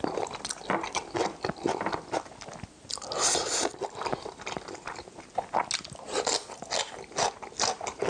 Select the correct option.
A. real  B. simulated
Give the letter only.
A